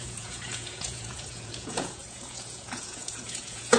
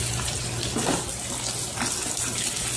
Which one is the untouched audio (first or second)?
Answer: second